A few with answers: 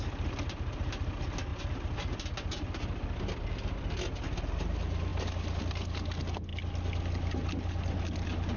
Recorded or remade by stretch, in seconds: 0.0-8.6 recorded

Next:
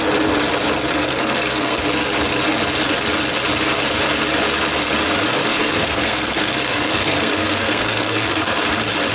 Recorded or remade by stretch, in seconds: 0.0-0.9 recorded; 0.9-1.8 remade; 1.8-5.5 recorded; 5.5-8.7 remade; 8.7-9.1 recorded